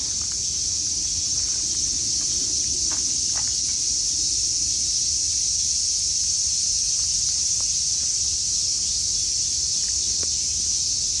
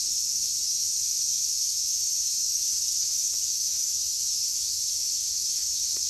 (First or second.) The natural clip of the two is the first